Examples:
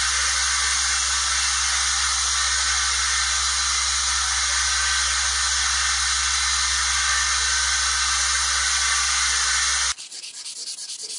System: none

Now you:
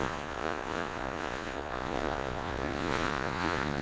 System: vocoder, Vocos